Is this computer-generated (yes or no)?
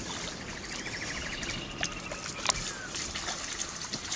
no